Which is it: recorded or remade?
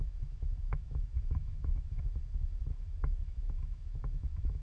remade